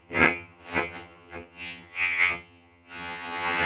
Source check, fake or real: fake